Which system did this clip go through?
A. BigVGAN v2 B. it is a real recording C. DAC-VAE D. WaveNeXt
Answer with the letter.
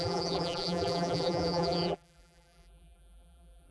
A